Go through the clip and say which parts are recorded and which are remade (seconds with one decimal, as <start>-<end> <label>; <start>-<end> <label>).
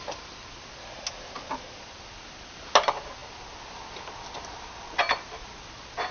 0.0-6.1 recorded